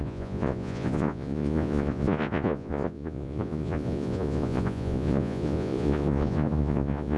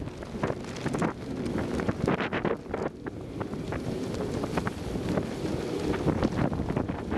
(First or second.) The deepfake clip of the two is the first